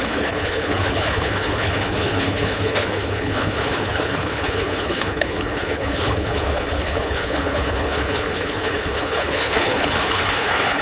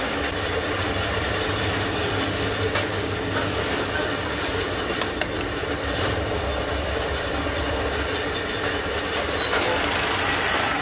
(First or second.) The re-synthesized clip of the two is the first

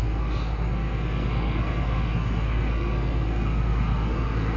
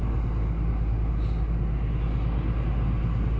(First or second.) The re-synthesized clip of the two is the first